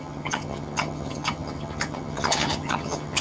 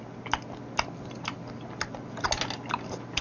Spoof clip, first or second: first